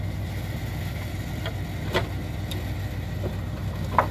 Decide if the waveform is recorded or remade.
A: recorded